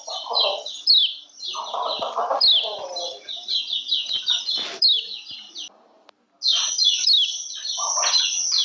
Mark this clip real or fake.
real